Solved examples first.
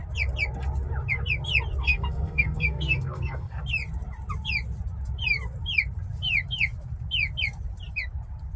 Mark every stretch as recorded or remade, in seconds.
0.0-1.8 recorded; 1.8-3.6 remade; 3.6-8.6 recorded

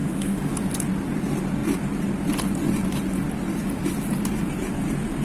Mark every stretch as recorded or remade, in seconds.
0.0-0.5 remade; 0.5-5.2 recorded

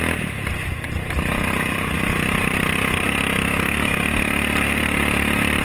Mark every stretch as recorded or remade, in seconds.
0.0-3.4 recorded; 3.4-4.0 remade; 4.0-5.6 recorded

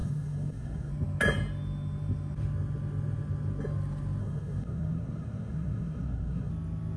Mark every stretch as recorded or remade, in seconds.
0.0-0.9 remade; 0.9-4.2 recorded; 4.2-6.5 remade; 6.5-7.0 recorded

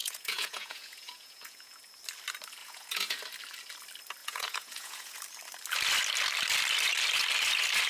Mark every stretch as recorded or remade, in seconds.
0.0-1.8 remade; 1.8-2.6 recorded; 2.6-3.2 remade; 3.2-4.2 recorded; 4.2-5.2 remade; 5.2-7.9 recorded